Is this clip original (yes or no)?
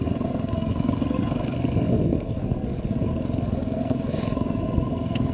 no